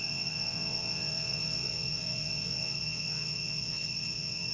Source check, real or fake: fake